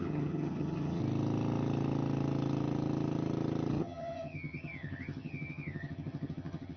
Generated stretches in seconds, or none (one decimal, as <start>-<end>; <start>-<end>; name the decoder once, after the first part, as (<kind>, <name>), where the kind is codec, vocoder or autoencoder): 0.0-1.0 (vocoder, HiFi-GAN); 3.7-6.8